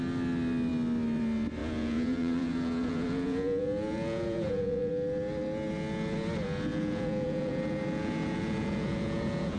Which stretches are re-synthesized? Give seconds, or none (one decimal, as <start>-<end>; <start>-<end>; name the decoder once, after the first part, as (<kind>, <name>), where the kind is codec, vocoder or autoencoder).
1.6-4.9 (vocoder, Vocos); 6.7-9.6